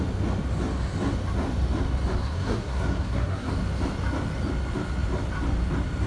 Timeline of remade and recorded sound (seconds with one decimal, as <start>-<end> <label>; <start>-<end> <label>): 0.0-2.2 recorded; 2.2-3.5 remade; 3.5-6.1 recorded